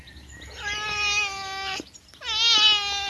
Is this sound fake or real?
real